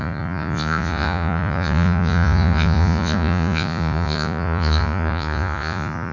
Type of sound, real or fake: fake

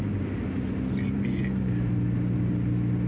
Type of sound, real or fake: real